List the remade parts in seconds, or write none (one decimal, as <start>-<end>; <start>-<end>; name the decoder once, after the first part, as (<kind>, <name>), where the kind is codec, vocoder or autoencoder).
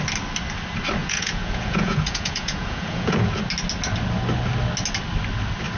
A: 1.0-3.4 (vocoder, Vocos)